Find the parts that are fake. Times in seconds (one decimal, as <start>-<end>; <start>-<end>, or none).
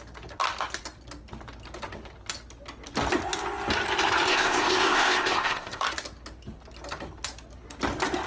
4.3-5.8